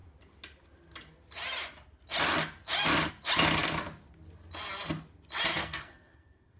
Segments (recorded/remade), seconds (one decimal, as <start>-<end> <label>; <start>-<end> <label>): 0.0-5.5 recorded; 5.5-6.6 remade